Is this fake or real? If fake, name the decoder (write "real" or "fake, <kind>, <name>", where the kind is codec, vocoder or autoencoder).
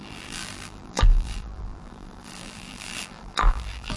fake, vocoder, BigVGAN v2